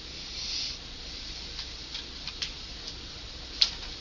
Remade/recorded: recorded